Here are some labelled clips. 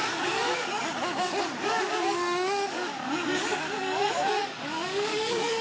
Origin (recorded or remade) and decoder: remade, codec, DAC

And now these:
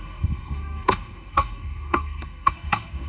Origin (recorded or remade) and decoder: remade, codec, SNAC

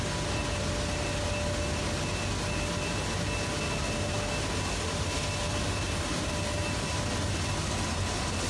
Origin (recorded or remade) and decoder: recorded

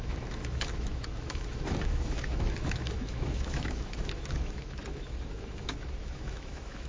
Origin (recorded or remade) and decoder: remade, autoencoder, DAC-VAE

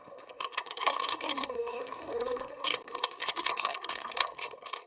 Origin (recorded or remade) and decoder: remade, codec, SNAC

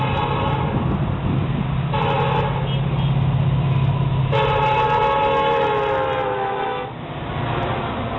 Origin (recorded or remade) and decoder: recorded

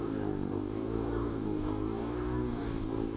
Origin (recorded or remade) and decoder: remade, codec, DAC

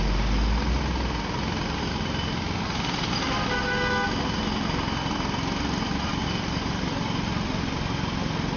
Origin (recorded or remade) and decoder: recorded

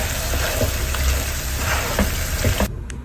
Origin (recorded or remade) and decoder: recorded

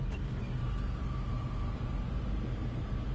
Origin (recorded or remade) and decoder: remade, vocoder, BigVGAN v2